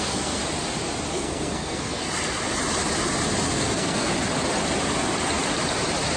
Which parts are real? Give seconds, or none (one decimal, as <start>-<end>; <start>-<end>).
0.4-1.1; 2.0-3.5; 4.1-6.2